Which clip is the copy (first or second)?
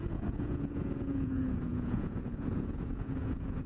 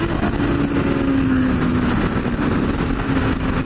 first